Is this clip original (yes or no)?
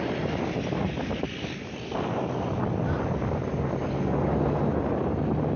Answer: yes